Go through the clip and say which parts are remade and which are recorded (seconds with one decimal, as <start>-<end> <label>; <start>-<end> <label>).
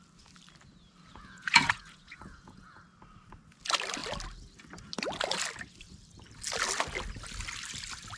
0.0-1.1 recorded; 1.1-2.8 remade; 2.8-8.2 recorded